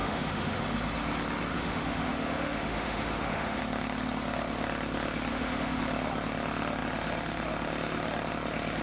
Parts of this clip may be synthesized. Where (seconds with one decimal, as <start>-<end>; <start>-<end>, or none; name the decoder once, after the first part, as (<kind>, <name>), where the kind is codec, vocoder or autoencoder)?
0.0-0.6 (autoencoder, DAC-VAE); 1.5-3.6; 5.3-5.8